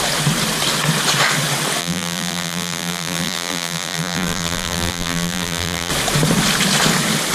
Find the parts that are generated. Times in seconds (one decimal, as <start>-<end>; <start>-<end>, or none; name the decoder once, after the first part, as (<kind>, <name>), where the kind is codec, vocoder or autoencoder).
1.8-5.9 (vocoder, BigVGAN v2)